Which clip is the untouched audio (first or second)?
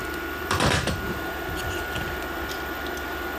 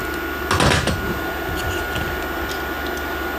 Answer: second